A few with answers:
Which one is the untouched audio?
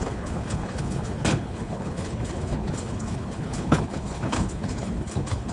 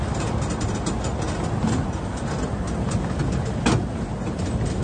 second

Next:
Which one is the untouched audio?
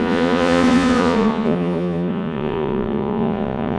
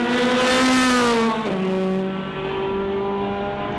second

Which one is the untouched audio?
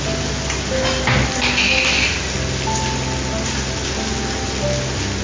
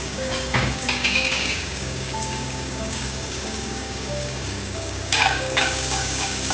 first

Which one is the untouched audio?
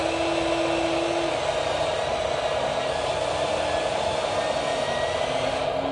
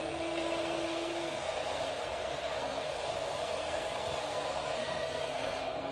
first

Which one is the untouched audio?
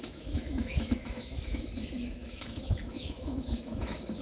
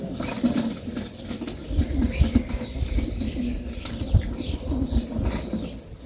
second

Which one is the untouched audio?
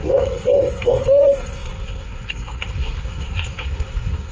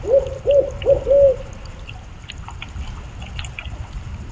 second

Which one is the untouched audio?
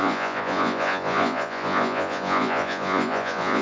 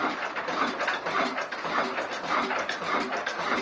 second